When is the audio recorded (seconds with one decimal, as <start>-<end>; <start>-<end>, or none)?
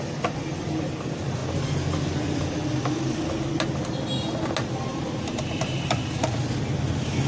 0.0-4.9; 6.4-7.3